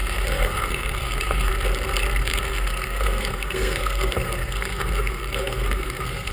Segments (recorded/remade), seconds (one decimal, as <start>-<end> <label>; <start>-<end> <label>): 0.0-1.5 remade; 1.5-2.3 recorded; 2.3-6.3 remade